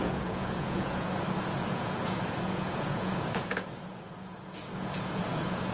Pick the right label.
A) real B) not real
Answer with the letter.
B